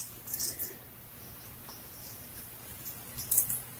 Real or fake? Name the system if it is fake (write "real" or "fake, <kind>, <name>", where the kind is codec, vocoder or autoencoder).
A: fake, vocoder, BigVGAN v2